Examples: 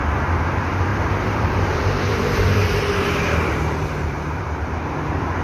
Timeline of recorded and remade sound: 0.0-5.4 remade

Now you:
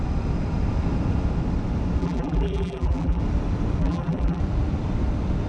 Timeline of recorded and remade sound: 0.0-2.0 recorded; 2.0-3.2 remade; 3.2-3.8 recorded; 3.8-4.4 remade; 4.4-5.5 recorded